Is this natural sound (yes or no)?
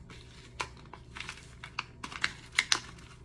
yes